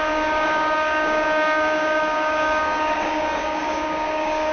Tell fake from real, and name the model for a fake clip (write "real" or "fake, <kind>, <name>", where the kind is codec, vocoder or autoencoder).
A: fake, codec, DAC